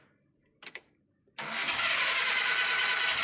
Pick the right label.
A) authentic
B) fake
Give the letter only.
A